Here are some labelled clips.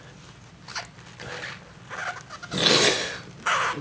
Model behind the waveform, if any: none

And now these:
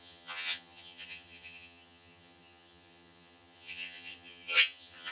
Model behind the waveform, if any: vocoder, HiFi-GAN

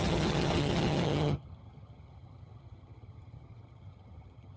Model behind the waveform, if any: vocoder, HiFi-GAN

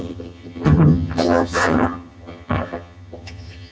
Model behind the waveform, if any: vocoder, HiFi-GAN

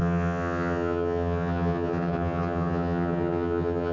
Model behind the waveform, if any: vocoder, HiFi-GAN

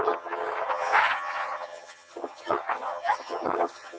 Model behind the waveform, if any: vocoder, HiFi-GAN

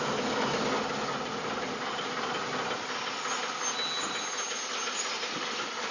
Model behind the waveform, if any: none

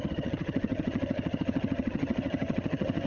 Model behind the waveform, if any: vocoder, HiFi-GAN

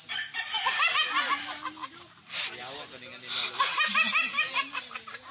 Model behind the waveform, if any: none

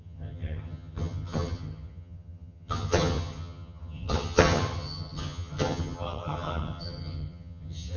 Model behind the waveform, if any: vocoder, HiFi-GAN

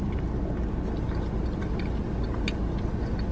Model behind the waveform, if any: none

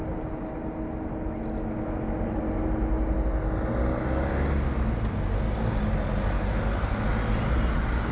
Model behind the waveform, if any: none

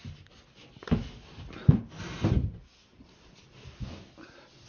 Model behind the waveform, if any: none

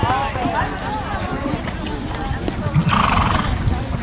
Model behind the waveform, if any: none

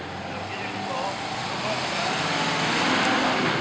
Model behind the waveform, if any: none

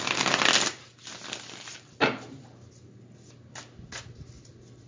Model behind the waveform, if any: none